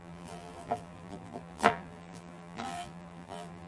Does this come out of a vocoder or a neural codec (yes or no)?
yes